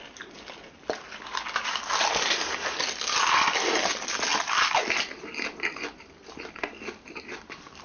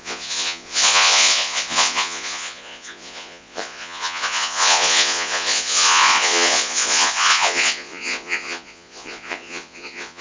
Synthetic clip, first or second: second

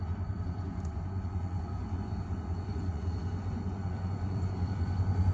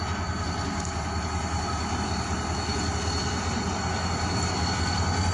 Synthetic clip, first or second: first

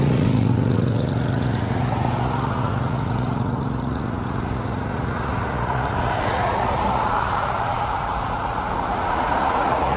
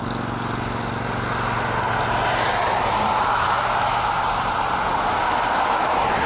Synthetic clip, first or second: first